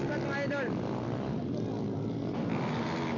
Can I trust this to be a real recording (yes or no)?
yes